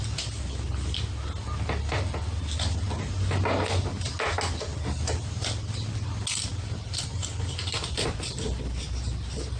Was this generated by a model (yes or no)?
no